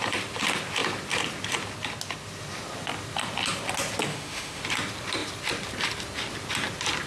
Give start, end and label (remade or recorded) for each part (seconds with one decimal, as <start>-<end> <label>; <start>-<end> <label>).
0.0-4.1 recorded; 4.1-4.6 remade; 4.6-7.1 recorded